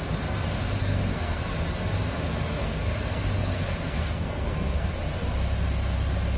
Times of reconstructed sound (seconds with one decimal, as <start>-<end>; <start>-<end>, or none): 0.8-1.5; 2.6-4.9